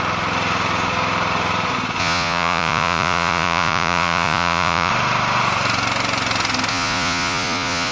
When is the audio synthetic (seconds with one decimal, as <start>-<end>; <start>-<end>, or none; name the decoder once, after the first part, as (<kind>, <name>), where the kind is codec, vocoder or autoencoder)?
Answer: 2.0-4.9 (vocoder, Vocos); 6.7-7.9